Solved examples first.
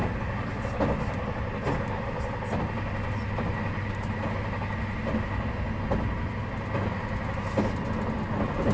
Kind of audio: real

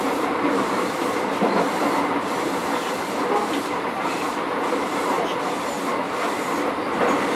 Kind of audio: real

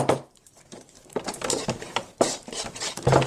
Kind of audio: fake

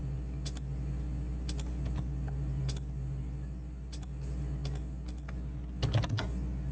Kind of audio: real